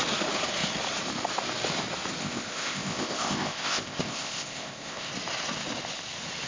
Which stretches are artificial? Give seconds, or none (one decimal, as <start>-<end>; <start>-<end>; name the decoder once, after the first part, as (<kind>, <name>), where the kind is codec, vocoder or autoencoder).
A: 2.2-5.1 (codec, ZipCodec)